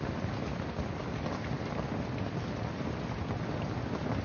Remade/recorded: recorded